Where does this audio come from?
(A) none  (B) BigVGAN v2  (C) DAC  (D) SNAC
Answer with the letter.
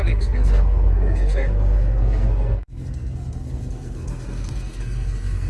D